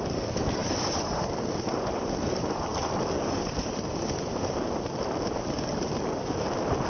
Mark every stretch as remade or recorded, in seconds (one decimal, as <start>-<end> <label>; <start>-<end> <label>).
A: 0.0-6.9 recorded